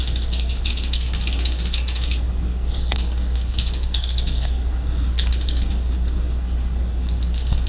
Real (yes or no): no